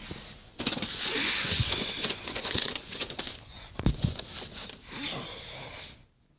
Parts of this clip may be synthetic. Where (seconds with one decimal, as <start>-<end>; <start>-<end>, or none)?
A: 0.4-4.2